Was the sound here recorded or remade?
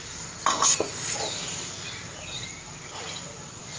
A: recorded